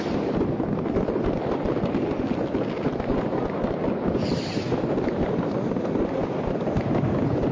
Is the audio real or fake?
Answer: real